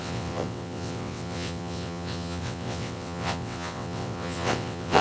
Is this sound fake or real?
fake